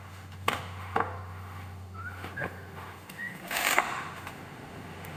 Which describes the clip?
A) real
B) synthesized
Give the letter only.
B